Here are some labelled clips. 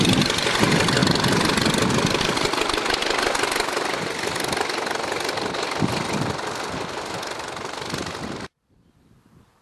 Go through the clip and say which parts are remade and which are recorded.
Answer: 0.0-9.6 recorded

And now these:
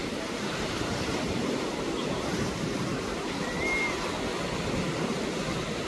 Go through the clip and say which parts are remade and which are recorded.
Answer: 0.0-3.5 remade; 3.5-5.9 recorded

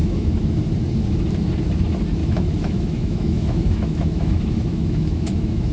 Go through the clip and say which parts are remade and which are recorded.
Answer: 0.0-0.6 remade; 0.6-2.2 recorded; 2.2-5.7 remade